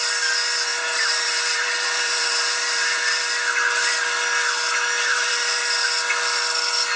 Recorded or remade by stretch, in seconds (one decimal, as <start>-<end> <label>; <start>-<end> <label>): 0.0-0.7 recorded; 0.7-3.2 remade; 3.2-5.1 recorded; 5.1-5.6 remade; 5.6-7.0 recorded